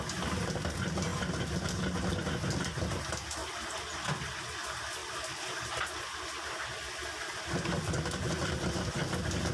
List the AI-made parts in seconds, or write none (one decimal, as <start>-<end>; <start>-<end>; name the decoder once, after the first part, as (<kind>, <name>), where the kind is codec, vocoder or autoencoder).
none